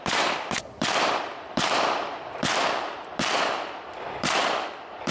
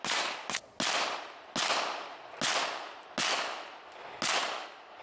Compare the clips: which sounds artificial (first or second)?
first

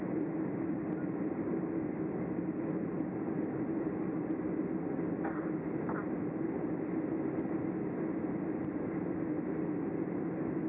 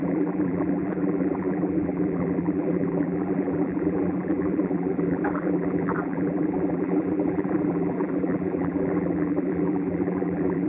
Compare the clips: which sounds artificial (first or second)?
second